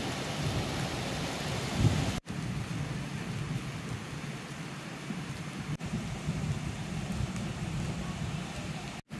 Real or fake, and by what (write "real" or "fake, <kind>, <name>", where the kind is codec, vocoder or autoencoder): real